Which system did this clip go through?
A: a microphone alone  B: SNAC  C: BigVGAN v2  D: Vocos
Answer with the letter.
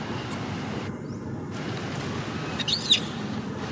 A